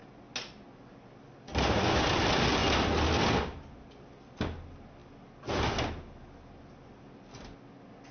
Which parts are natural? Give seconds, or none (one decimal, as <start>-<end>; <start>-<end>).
0.0-8.1